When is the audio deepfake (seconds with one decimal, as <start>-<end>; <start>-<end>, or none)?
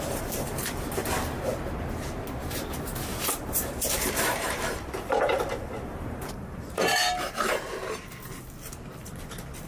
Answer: 0.0-1.5; 2.7-3.1; 3.9-6.9